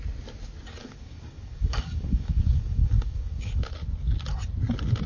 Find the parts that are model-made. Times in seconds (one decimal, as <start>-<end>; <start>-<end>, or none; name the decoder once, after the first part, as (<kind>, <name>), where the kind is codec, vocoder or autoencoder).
0.8-3.6 (codec, DAC)